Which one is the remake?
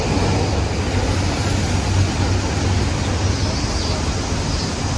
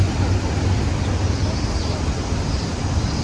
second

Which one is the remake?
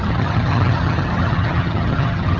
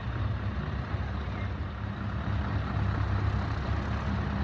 first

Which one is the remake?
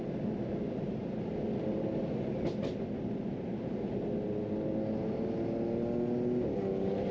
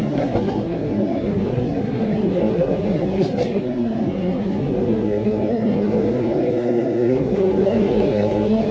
second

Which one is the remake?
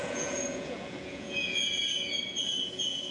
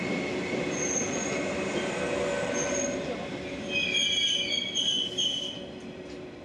first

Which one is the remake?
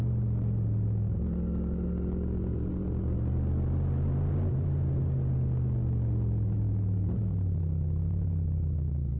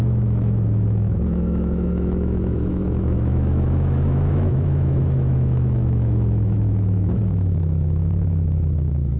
second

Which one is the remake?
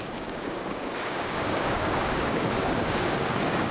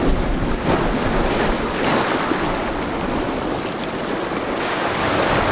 first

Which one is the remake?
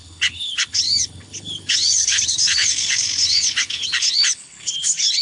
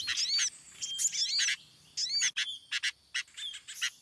first